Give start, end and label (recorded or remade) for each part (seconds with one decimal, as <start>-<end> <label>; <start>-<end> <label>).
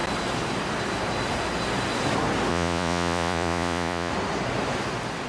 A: 0.0-2.5 recorded; 2.5-4.1 remade; 4.1-5.3 recorded